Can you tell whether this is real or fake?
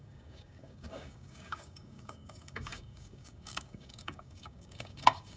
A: fake